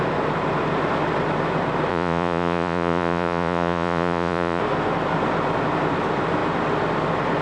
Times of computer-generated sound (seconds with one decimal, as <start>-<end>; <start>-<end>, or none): 1.9-4.6